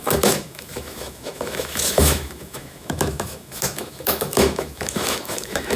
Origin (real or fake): fake